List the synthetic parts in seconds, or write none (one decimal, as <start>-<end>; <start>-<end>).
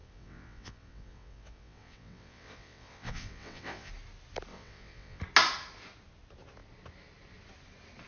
0.0-3.9; 4.5-5.2